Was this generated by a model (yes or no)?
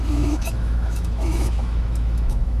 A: yes